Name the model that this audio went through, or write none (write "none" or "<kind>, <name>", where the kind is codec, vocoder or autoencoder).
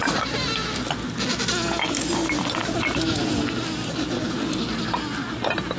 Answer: none